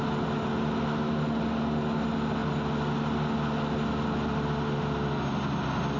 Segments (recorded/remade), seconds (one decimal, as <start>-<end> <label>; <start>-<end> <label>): 0.0-6.0 recorded